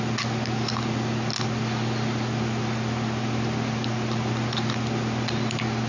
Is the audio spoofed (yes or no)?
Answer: no